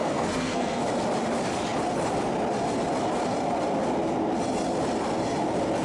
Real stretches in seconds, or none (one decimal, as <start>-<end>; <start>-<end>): 0.8-5.8

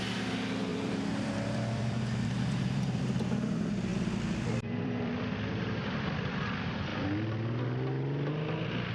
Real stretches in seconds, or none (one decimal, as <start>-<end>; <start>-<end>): 0.0-0.7; 3.0-3.9; 6.4-8.9

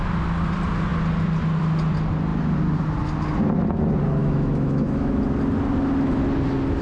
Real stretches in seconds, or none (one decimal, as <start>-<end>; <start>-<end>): 0.0-4.2; 5.2-6.8

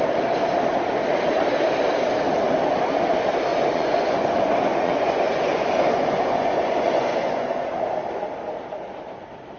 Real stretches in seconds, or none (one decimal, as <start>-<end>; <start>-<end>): 0.0-3.5; 7.7-9.6

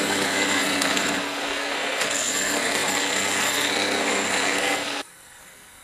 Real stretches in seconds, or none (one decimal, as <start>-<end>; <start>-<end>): none

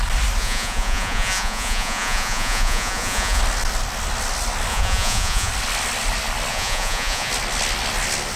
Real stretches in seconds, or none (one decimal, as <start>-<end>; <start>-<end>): 0.0-0.4; 3.4-4.7; 5.5-6.5; 7.3-8.4